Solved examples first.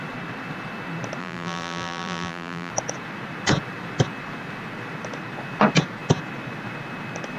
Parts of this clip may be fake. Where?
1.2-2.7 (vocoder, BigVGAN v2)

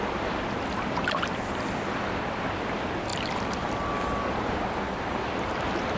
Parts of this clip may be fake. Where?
3.1-3.7 (vocoder, BigVGAN v2)

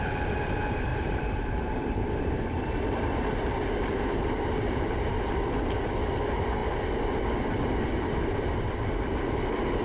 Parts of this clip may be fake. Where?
0.9-5.4 (vocoder, BigVGAN v2)

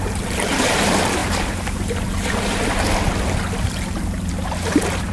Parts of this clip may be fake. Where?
0.0-1.2 (vocoder, BigVGAN v2); 4.3-5.1

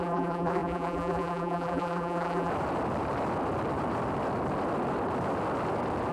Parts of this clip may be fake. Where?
0.0-2.5 (vocoder, BigVGAN v2)

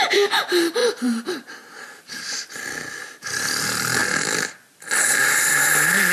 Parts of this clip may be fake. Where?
0.8-2.2 (vocoder, BigVGAN v2)

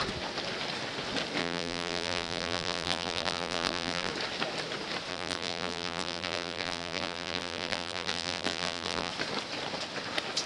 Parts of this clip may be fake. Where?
1.4-4.1 (vocoder, BigVGAN v2); 5.1-9.1

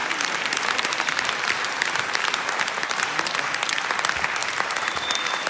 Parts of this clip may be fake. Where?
0.0-3.3 (vocoder, BigVGAN v2); 4.4-5.5